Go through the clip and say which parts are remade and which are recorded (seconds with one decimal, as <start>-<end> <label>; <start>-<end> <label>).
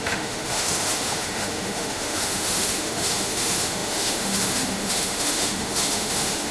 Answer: 0.0-6.5 remade